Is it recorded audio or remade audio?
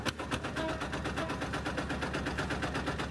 recorded